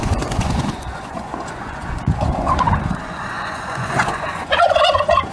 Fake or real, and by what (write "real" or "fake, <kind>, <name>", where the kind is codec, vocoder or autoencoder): fake, vocoder, Vocos